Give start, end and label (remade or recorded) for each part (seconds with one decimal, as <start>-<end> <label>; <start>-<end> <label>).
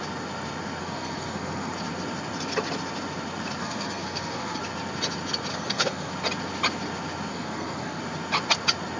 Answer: 0.0-0.8 recorded; 0.8-1.7 remade; 1.7-3.6 recorded; 3.6-4.6 remade; 4.6-5.5 recorded; 5.5-6.1 remade; 6.1-7.3 recorded; 7.3-8.0 remade; 8.0-9.0 recorded